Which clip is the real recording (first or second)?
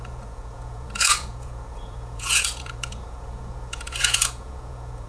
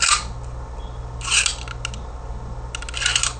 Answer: second